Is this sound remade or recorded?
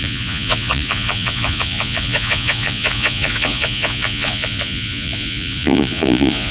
remade